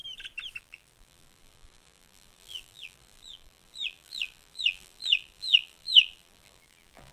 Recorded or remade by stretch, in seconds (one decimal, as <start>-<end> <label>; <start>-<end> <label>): 0.0-0.6 recorded; 0.6-7.1 remade